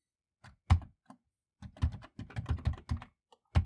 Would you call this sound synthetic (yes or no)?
no